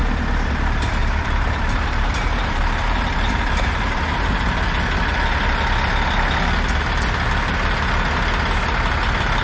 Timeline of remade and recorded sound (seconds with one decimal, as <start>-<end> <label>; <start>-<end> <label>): 0.0-1.0 recorded; 1.0-4.3 remade; 4.3-9.4 recorded